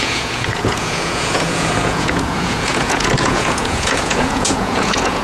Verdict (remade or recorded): remade